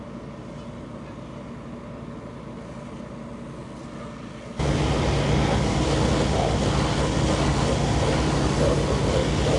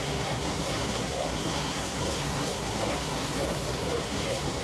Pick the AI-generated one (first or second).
second